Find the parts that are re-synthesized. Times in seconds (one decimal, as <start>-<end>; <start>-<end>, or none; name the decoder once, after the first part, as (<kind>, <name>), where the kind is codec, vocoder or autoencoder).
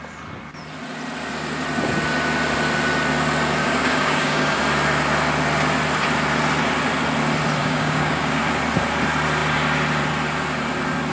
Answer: 3.6-4.6 (codec, DAC); 7.6-8.4